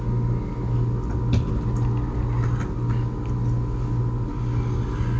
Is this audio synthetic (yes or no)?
no